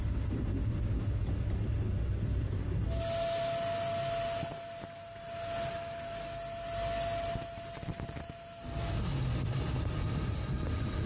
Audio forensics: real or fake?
real